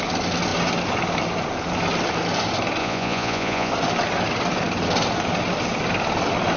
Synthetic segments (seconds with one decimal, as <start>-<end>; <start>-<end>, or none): 2.8-3.7